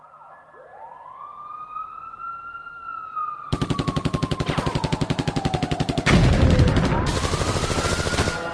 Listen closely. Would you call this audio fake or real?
real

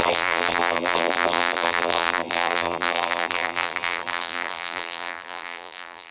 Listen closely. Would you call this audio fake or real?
fake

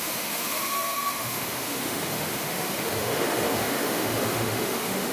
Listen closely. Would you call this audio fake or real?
fake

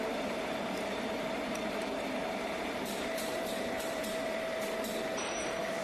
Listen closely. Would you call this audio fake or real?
fake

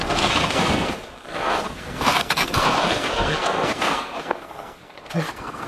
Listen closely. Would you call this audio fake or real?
fake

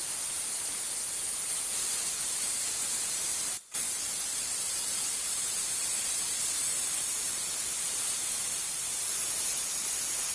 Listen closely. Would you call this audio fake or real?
fake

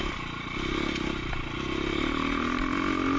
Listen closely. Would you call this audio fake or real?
real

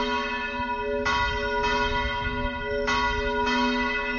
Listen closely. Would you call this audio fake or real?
real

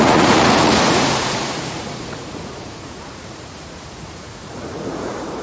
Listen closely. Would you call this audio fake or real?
fake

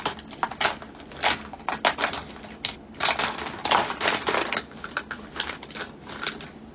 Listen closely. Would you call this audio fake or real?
real